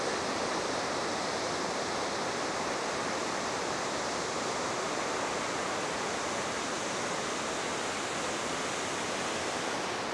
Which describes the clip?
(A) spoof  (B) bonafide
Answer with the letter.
B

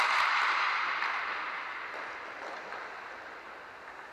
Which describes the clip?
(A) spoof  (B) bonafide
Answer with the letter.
B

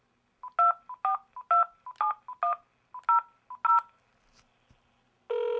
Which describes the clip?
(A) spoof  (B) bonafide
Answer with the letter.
B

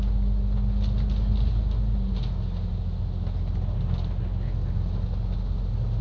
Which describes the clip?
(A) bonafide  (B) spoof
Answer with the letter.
A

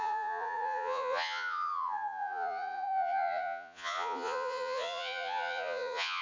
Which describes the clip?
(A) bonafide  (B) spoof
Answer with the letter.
B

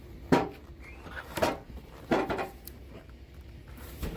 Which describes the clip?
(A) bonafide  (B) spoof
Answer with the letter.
B